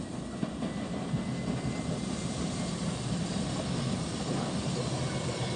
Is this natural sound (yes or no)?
yes